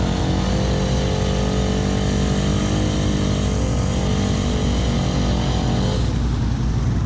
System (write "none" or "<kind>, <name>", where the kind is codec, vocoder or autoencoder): none